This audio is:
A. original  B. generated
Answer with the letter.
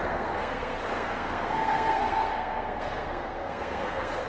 B